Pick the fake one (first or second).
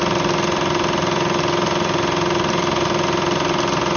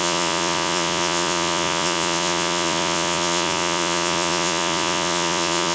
second